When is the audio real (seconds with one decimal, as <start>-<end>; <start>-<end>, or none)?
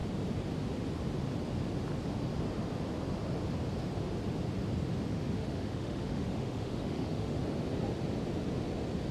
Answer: 0.0-5.1; 7.4-9.1